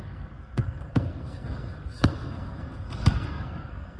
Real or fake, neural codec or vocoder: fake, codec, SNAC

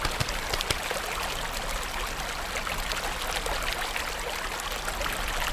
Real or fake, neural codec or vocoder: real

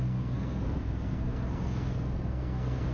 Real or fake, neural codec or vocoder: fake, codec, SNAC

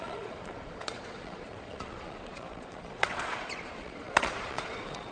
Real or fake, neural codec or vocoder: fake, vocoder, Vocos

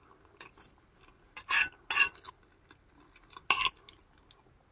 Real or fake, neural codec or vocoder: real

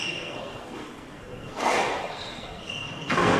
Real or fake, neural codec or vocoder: fake, codec, SNAC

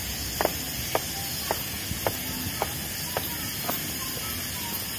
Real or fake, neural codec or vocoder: real